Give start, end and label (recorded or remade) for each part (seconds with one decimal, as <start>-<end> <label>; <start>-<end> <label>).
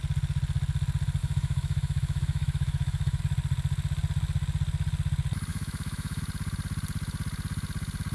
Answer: 0.0-1.2 recorded; 1.2-3.2 remade; 3.2-5.5 recorded; 5.5-6.2 remade; 6.2-8.1 recorded